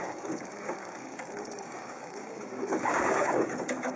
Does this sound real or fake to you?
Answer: fake